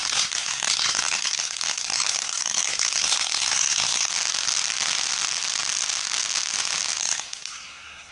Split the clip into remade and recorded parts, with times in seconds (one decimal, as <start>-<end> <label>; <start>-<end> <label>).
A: 0.0-4.1 remade; 4.1-7.0 recorded; 7.0-8.1 remade